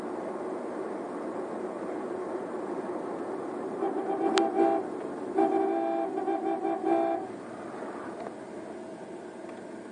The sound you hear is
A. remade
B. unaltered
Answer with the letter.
B